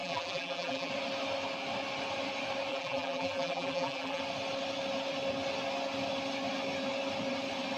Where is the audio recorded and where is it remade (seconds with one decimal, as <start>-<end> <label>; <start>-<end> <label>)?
0.0-0.9 remade; 0.9-2.7 recorded; 2.7-4.2 remade; 4.2-7.8 recorded